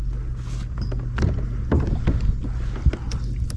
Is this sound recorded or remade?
recorded